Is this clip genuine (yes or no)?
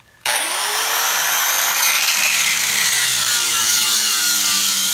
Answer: no